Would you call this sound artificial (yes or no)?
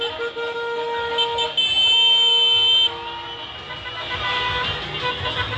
no